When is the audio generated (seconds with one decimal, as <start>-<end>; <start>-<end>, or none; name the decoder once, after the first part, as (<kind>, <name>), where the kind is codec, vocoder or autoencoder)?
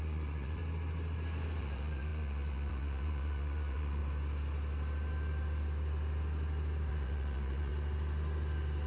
0.0-0.6 (vocoder, Vocos); 1.6-4.0; 6.9-7.7